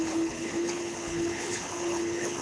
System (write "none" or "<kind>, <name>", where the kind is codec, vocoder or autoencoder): codec, HILCodec